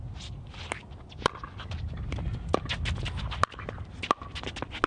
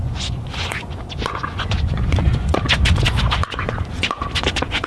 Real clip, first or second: first